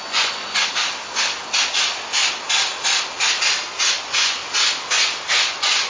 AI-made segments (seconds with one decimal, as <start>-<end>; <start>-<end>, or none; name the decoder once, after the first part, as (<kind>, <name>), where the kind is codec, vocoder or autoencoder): 0.0-0.4 (vocoder, Vocos); 3.9-4.4; 5.5-5.9